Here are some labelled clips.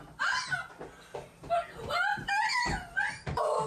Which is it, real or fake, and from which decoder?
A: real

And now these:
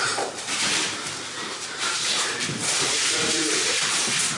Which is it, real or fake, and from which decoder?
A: fake, vocoder, BigVGAN v2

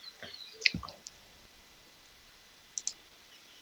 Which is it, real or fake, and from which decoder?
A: real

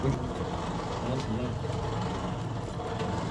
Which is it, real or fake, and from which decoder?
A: real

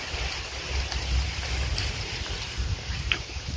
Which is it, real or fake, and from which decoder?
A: real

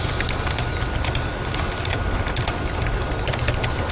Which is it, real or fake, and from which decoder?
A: fake, vocoder, BigVGAN v2